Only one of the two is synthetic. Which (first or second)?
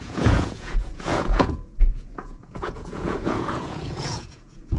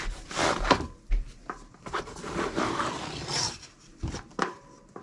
first